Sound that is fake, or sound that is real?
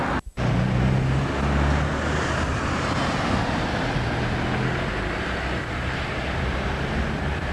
real